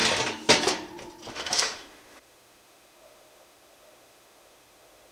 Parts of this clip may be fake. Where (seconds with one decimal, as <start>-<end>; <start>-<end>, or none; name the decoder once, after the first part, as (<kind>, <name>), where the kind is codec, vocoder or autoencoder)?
1.3-5.1 (autoencoder, DAC-VAE)